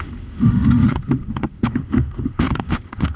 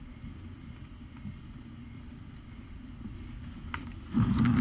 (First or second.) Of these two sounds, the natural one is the second